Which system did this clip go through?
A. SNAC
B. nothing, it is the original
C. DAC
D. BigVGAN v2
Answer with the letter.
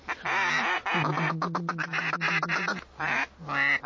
B